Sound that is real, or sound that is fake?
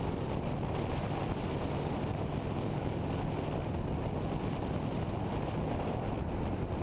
real